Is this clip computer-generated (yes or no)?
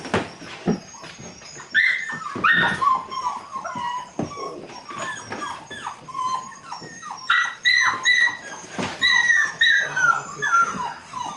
no